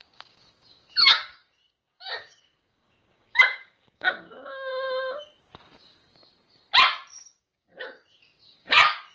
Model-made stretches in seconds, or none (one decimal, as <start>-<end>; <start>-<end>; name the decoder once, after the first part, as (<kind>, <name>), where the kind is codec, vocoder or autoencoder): 0.0-4.7 (codec, DAC); 5.4-6.2; 7.4-9.1